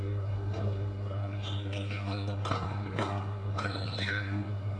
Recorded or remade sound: remade